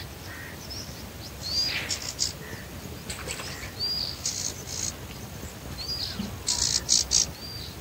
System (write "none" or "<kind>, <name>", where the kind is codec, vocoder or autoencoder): none